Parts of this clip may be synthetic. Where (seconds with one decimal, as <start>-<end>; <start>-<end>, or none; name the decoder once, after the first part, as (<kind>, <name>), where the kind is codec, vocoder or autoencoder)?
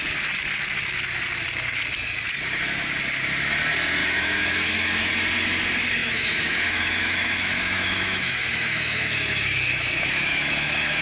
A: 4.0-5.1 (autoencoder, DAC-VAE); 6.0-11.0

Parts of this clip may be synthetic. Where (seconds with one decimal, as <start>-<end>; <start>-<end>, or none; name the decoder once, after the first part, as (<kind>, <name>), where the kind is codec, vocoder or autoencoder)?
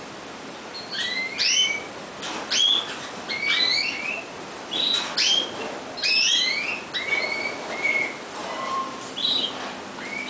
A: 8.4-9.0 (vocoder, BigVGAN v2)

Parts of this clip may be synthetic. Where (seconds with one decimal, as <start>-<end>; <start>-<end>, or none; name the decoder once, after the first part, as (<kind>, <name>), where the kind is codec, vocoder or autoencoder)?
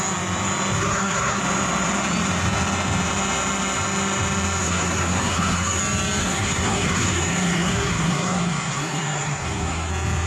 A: 0.8-1.4 (codec, SNAC); 4.6-5.8; 6.2-9.9